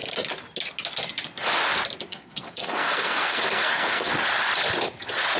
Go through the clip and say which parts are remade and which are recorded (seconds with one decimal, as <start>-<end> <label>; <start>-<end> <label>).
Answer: 0.0-2.1 recorded; 2.1-4.1 remade; 4.1-5.4 recorded